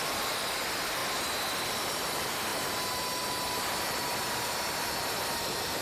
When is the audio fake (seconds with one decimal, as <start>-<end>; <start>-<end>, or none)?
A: 0.0-1.0; 1.7-5.8